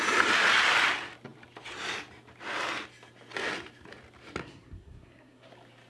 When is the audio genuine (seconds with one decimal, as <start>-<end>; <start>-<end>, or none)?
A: 0.0-4.4; 5.5-5.9